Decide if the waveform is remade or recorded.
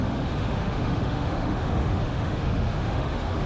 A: remade